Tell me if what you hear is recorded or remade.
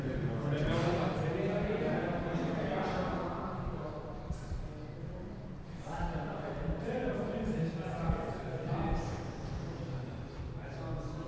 recorded